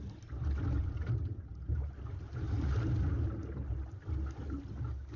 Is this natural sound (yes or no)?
yes